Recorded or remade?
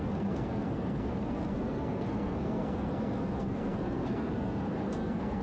remade